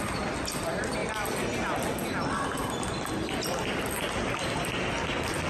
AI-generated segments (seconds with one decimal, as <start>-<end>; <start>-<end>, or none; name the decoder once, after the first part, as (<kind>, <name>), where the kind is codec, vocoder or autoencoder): none